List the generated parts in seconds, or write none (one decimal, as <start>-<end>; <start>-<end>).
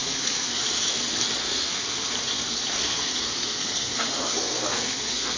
0.0-0.6; 1.4-2.1; 2.8-5.4